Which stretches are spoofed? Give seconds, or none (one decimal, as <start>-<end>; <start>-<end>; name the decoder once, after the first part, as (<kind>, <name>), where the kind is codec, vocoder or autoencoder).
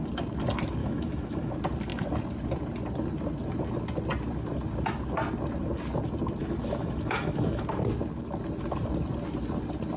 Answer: 0.8-1.5 (autoencoder, DAC-VAE); 6.4-7.6